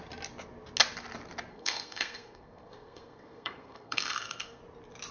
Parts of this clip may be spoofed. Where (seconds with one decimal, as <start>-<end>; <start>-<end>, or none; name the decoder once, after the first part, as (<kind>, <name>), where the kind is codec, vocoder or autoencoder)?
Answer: 1.5-4.6 (codec, SNAC)